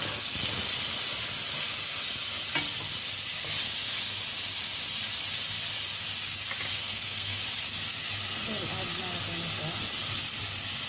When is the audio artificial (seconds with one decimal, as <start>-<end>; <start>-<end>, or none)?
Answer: 6.7-7.4